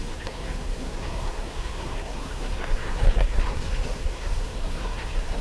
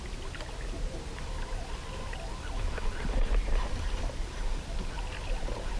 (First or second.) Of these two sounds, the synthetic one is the first